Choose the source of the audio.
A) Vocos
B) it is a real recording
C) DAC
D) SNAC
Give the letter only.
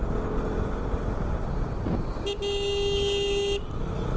B